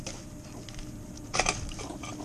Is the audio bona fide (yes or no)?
yes